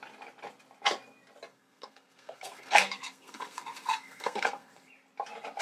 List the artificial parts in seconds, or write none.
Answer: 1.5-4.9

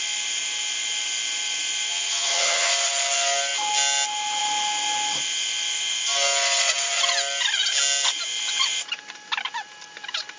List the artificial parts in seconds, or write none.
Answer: 1.9-2.7

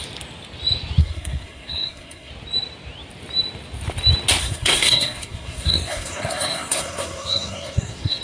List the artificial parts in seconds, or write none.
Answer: 1.0-2.3; 4.4-8.2

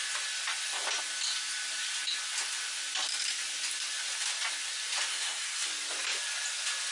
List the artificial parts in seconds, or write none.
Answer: 5.1-5.7